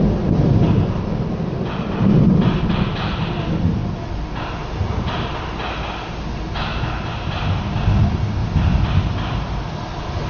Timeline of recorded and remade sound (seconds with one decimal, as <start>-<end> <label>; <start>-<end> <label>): 0.0-6.7 recorded; 6.7-7.4 remade; 7.4-10.3 recorded